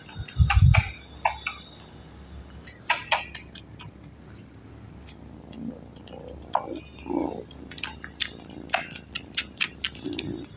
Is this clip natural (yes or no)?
yes